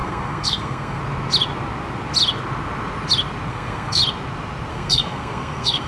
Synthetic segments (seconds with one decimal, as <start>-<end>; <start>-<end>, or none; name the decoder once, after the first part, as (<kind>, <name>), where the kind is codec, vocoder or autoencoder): 0.0-1.0 (codec, SNAC); 3.5-4.0; 4.7-5.9